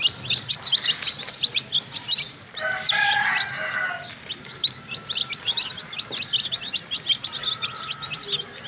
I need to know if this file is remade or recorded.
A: recorded